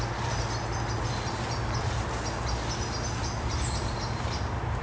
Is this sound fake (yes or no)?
no